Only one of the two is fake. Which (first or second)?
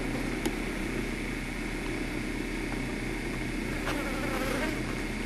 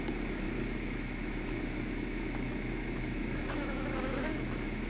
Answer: second